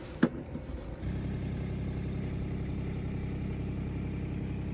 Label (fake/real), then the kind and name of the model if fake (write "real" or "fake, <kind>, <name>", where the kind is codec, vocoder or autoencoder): real